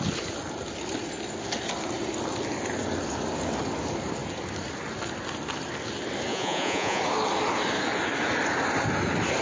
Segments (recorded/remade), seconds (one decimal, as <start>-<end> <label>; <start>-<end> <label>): 0.0-6.3 recorded; 6.3-7.0 remade; 7.0-9.4 recorded